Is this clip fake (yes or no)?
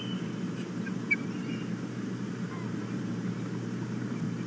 yes